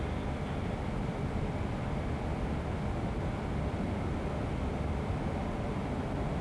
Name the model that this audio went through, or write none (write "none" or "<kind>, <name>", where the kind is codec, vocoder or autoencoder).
none